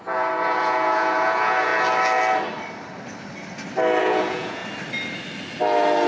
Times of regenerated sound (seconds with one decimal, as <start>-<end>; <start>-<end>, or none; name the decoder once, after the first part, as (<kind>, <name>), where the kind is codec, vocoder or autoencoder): 0.0-1.7 (vocoder, Vocos); 4.0-4.6